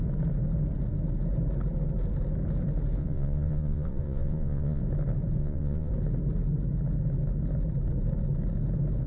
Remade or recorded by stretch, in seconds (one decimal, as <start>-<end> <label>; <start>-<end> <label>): 0.0-3.0 recorded; 3.0-4.8 remade; 4.8-5.4 recorded; 5.4-5.9 remade; 5.9-9.1 recorded